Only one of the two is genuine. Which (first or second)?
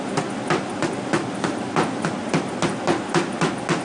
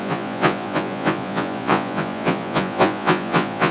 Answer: first